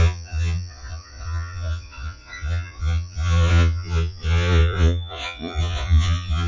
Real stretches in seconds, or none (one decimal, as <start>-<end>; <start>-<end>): none